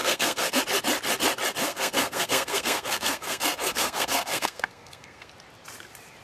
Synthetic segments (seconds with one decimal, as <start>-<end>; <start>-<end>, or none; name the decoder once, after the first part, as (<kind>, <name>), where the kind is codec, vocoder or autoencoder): 0.0-0.6 (codec, SNAC); 1.6-5.3